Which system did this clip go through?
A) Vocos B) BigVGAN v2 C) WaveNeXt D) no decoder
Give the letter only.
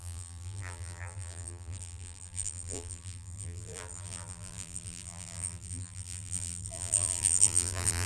B